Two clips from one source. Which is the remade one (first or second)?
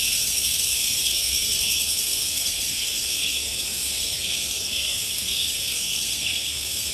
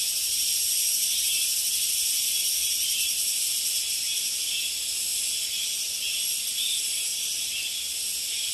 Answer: first